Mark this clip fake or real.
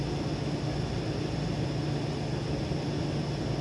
real